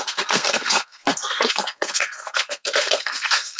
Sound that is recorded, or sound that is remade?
remade